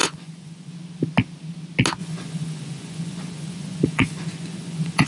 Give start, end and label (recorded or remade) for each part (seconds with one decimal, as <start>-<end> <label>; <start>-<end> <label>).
0.0-0.7 remade; 0.7-2.0 recorded; 2.0-5.1 remade